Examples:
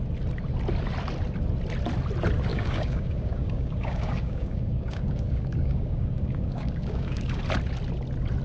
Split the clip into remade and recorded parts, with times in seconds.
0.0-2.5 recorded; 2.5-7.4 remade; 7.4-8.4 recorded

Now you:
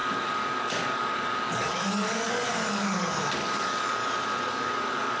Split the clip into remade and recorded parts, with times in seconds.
0.0-4.0 remade; 4.0-4.5 recorded; 4.5-5.2 remade

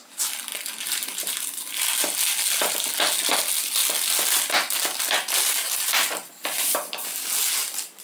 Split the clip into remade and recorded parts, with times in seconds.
0.0-8.0 recorded

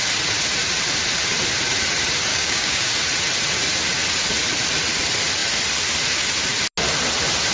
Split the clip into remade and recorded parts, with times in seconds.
0.0-2.3 recorded; 2.3-2.9 remade; 2.9-7.5 recorded

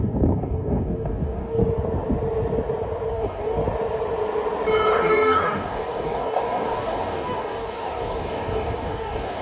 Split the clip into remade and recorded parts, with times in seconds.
0.0-1.6 remade; 1.6-3.1 recorded; 3.1-3.6 remade; 3.6-5.0 recorded; 5.0-9.4 remade

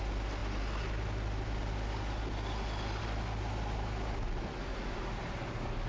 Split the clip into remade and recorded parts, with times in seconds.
0.0-5.9 recorded